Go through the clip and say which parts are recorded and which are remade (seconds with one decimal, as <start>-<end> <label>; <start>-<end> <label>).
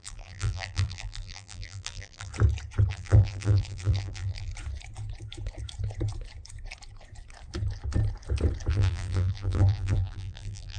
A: 0.0-2.3 remade; 2.3-2.9 recorded; 2.9-4.5 remade; 4.5-8.7 recorded; 8.7-10.8 remade